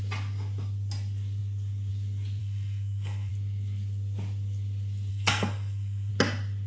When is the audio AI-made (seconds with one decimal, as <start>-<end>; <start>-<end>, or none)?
2.4-3.3; 5.1-6.1